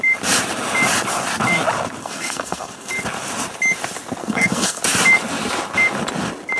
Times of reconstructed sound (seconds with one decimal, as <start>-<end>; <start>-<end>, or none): 2.0-2.9; 4.2-4.8